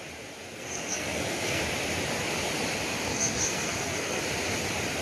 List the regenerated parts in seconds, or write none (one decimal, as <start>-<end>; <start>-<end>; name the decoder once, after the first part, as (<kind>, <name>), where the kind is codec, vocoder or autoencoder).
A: 0.5-1.6 (codec, SNAC); 3.1-4.2